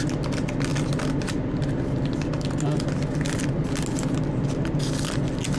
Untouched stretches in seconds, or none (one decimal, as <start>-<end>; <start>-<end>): 0.0-5.6

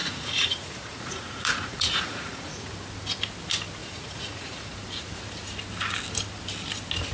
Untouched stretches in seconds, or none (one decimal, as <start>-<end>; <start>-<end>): 2.7-3.8; 4.7-7.1

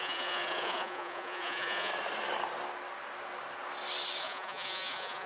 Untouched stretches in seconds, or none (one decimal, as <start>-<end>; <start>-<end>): 1.9-4.2

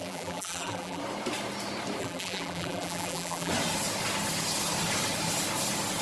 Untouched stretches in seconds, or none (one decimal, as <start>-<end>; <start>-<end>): 1.0-2.0; 3.5-6.0

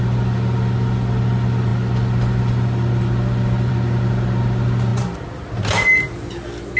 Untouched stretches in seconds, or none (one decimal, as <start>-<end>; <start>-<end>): 0.0-6.8

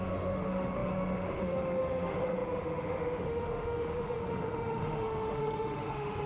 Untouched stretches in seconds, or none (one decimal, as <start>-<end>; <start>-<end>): none

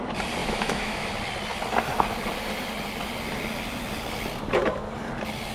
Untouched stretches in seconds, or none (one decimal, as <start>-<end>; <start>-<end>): 0.0-0.4; 1.1-5.5

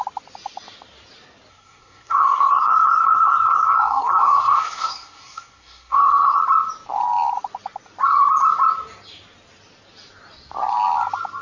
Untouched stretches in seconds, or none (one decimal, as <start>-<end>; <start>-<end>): 0.0-1.5; 6.4-11.4